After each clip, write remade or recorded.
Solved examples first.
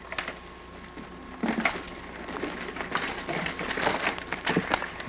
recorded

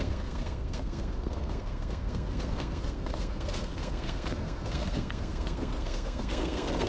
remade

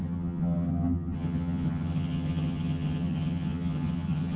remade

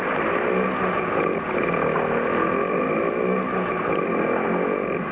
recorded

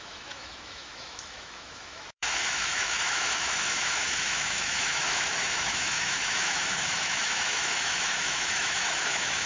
remade